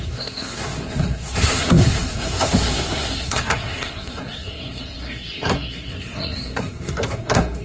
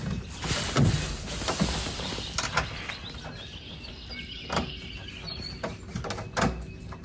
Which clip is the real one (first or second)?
second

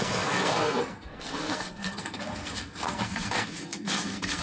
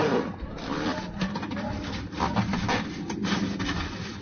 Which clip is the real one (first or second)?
second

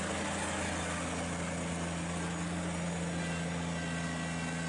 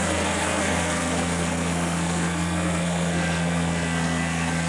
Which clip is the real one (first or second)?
first